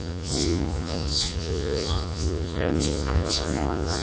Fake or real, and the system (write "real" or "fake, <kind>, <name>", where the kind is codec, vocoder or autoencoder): fake, vocoder, Vocos